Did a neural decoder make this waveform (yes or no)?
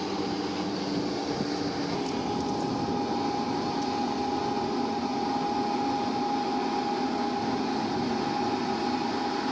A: no